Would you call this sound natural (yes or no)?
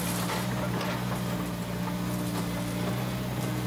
yes